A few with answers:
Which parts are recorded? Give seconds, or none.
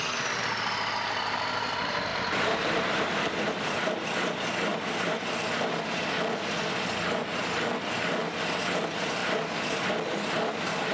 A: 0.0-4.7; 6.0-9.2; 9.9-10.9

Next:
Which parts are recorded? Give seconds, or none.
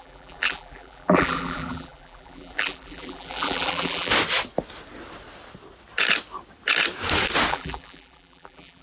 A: 4.1-7.5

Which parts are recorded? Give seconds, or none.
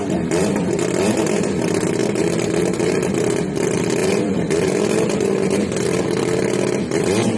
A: none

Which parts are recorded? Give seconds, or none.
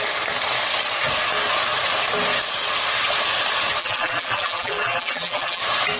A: 0.0-3.8; 5.6-6.0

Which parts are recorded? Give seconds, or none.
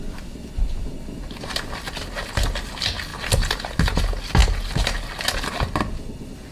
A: 0.0-3.1; 3.6-6.5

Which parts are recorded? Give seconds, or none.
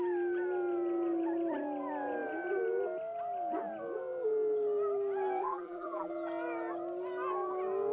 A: 0.0-5.4; 6.1-7.9